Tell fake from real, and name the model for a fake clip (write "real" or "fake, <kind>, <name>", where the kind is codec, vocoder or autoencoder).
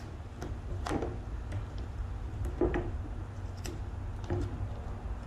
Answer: real